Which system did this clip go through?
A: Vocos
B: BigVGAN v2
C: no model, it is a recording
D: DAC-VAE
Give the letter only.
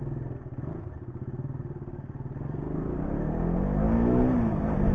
C